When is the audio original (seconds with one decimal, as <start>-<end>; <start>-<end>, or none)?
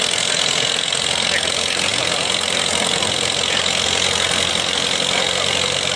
0.0-6.0